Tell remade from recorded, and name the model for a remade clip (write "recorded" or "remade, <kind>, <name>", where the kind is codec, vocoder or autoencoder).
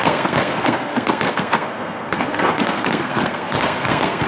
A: remade, codec, SNAC